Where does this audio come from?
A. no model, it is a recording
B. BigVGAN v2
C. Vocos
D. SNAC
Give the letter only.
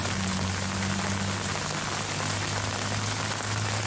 A